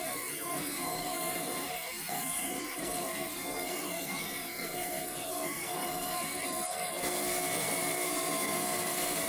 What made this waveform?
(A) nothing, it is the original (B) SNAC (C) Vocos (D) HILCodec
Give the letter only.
B